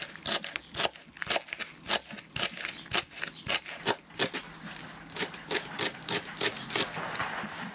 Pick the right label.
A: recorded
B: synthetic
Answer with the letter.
A